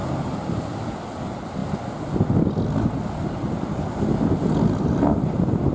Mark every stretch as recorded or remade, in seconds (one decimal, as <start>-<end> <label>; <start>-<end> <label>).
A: 0.0-5.7 recorded